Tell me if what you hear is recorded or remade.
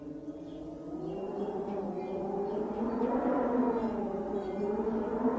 recorded